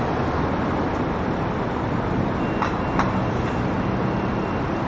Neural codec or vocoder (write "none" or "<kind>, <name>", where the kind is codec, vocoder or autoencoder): none